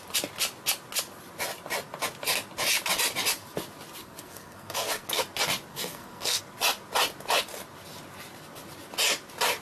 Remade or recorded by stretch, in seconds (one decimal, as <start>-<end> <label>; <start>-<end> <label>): 0.0-4.0 recorded; 4.0-5.2 remade; 5.2-5.7 recorded; 5.7-6.4 remade; 6.4-9.6 recorded